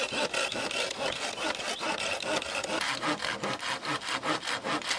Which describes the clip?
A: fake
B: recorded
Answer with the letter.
B